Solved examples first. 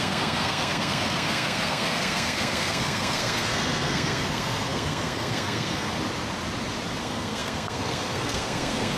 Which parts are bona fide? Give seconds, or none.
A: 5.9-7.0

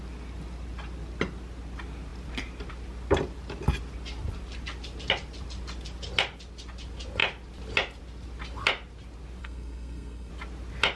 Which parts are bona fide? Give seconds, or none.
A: 0.0-9.4; 10.3-11.0

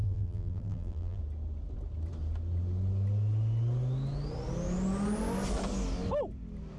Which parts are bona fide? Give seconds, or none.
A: 1.2-6.8

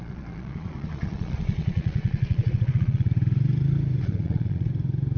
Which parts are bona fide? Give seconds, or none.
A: 3.1-4.0; 4.7-5.2

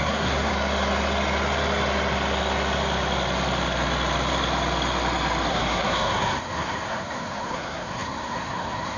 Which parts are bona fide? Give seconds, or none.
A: 0.5-5.5

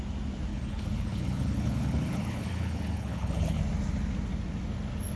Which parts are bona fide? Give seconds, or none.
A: 0.0-0.5; 3.6-5.2

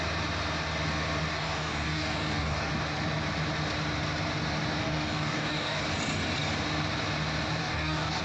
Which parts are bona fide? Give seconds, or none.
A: 0.0-1.3; 2.7-4.8; 5.8-7.6

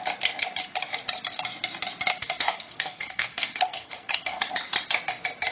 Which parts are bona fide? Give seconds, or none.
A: 0.0-2.1; 4.4-5.5